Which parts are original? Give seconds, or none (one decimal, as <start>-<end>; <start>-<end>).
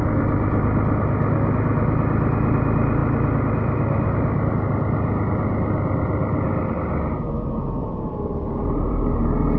0.0-7.8; 9.2-9.6